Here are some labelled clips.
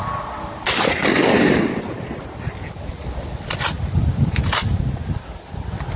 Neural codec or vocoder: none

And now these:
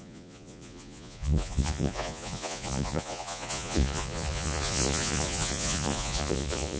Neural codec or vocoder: vocoder, Vocos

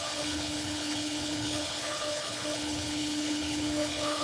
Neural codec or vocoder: codec, HILCodec